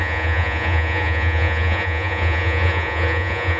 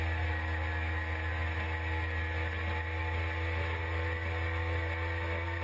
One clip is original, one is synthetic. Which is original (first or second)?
second